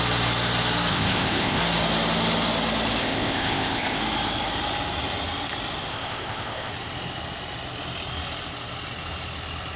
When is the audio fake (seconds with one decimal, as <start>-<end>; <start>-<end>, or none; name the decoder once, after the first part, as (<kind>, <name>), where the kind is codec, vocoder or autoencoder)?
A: 0.9-1.6 (codec, ZipCodec); 3.0-4.0; 5.9-6.7